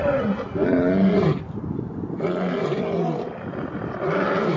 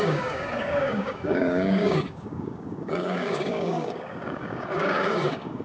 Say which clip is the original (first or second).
first